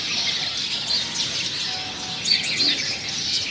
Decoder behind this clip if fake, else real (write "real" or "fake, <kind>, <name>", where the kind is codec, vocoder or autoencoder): real